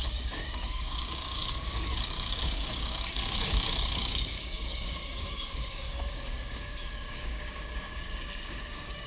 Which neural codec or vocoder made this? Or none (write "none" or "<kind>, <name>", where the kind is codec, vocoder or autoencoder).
codec, DAC